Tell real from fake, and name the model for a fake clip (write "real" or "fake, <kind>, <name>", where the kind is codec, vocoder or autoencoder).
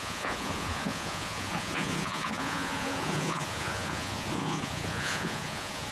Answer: fake, vocoder, Vocos